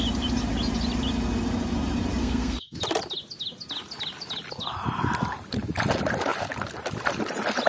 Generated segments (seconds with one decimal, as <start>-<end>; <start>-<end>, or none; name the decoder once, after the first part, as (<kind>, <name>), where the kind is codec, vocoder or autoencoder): 2.2-2.8 (codec, SNAC)